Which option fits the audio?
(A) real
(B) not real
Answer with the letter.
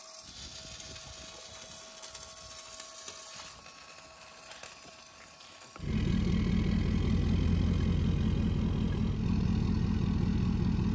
A